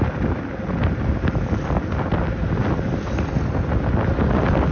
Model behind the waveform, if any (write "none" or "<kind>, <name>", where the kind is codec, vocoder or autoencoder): none